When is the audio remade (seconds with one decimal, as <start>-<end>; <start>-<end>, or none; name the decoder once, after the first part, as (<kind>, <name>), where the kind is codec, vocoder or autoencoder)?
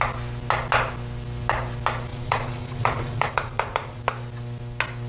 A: 2.1-4.0 (vocoder, Vocos)